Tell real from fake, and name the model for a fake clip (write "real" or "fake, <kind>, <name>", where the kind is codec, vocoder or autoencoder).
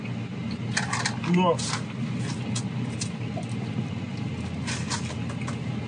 real